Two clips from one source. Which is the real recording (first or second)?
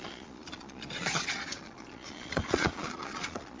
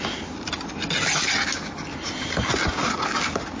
second